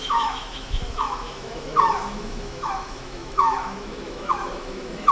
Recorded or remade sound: remade